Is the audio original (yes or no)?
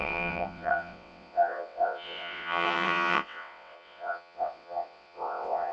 no